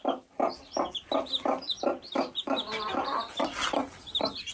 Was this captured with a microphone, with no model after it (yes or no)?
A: no